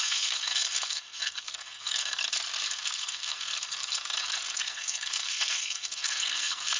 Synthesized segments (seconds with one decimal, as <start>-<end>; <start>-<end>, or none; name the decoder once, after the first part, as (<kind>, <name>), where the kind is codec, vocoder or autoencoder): 0.0-2.2 (codec, SNAC); 2.7-6.8